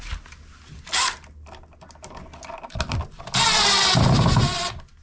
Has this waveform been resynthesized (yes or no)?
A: no